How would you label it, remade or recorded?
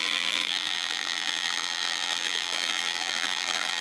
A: remade